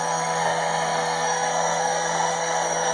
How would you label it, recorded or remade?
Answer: remade